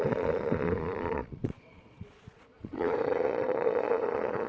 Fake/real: fake